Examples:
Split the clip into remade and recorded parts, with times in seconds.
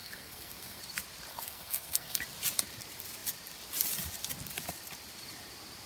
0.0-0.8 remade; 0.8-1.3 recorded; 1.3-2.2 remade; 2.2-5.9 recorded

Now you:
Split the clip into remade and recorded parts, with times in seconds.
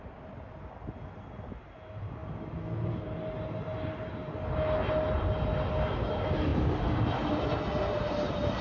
0.0-8.6 recorded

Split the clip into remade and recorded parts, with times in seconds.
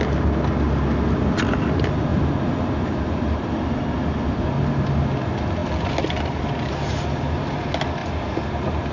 0.0-8.9 recorded